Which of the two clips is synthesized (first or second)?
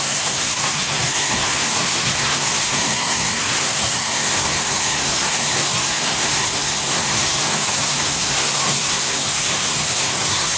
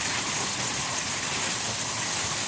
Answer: first